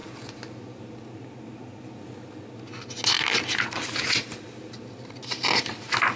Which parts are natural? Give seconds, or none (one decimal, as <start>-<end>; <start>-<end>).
0.0-6.2